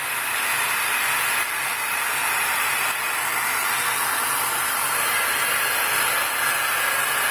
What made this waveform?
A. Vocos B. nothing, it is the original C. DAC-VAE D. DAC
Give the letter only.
B